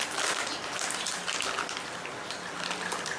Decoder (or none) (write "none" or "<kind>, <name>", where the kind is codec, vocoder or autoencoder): none